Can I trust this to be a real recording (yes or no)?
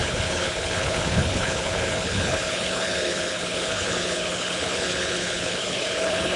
no